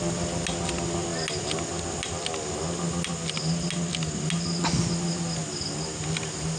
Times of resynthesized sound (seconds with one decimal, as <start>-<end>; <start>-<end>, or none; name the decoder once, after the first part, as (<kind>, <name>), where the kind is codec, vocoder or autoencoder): none